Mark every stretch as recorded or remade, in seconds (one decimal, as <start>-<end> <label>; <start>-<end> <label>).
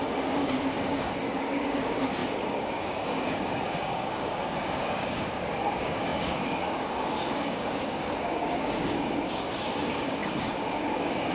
0.0-11.3 remade